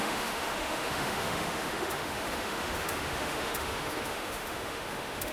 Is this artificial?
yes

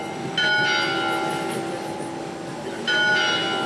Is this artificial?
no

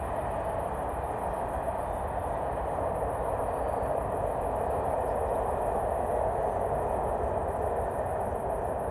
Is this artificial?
no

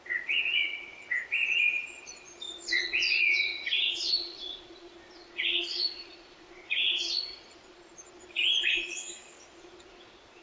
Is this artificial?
yes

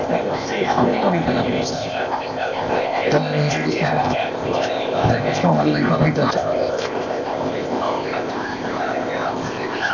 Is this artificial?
yes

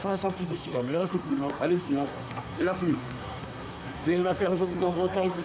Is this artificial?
yes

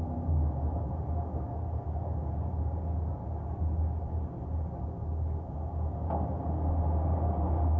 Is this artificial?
no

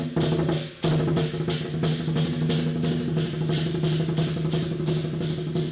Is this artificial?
no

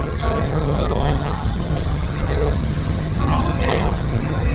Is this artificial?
yes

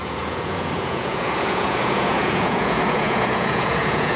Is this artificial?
yes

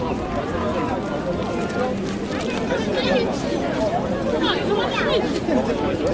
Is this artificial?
no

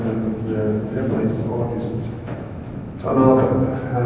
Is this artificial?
yes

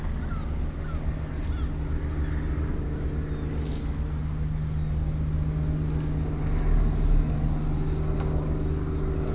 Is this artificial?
no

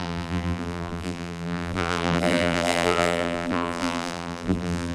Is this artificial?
yes